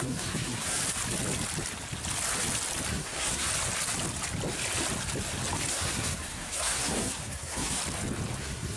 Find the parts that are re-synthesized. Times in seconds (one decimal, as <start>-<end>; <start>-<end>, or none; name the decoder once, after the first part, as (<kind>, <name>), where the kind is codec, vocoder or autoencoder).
0.0-0.8 (codec, SNAC); 2.9-3.5; 5.7-7.8; 8.4-8.8